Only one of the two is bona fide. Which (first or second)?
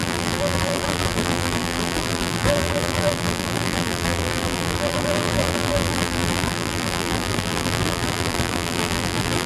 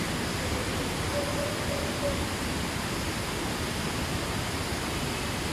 second